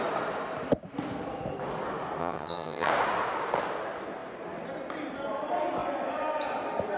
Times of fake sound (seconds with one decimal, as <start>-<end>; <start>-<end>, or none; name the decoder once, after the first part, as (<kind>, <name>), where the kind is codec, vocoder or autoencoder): 2.2-2.9 (vocoder, HiFi-GAN)